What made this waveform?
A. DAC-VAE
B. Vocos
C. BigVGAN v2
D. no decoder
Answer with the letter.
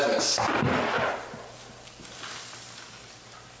D